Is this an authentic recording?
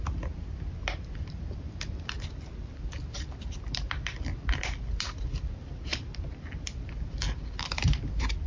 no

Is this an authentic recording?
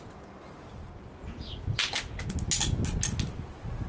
yes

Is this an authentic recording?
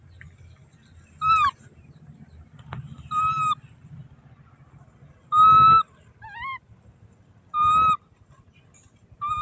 yes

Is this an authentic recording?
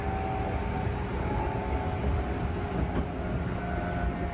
yes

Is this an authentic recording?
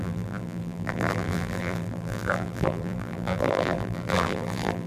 no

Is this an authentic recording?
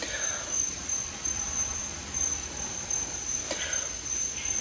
no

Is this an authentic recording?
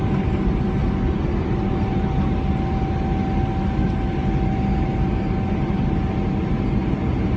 yes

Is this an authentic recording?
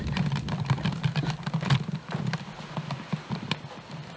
yes